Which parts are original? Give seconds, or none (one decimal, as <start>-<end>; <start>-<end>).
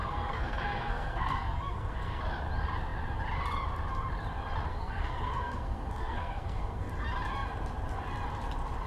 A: 2.2-4.7; 6.9-8.9